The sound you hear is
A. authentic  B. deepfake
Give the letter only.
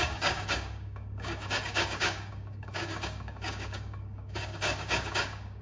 B